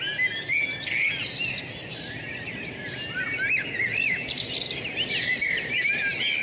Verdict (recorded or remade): recorded